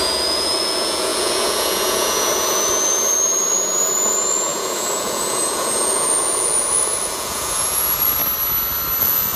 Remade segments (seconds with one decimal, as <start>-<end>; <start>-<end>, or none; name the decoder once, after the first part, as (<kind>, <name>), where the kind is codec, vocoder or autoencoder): 0.0-8.2 (vocoder, Vocos); 9.0-9.4